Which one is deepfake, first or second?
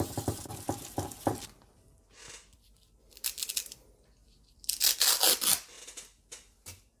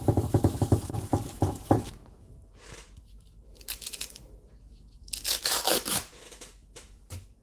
second